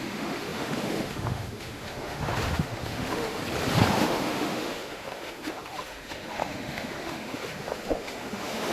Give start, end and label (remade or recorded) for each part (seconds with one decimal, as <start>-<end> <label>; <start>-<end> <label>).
0.0-3.4 remade; 3.4-3.9 recorded; 3.9-8.7 remade